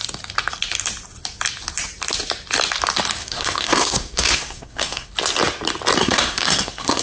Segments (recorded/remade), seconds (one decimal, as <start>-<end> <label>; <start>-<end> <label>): 0.0-3.2 recorded; 3.2-5.1 remade; 5.1-6.0 recorded; 6.0-7.0 remade